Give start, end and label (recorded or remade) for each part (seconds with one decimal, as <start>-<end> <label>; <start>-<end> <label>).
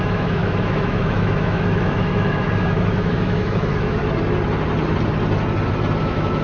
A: 0.0-4.0 remade; 4.0-6.0 recorded; 6.0-6.4 remade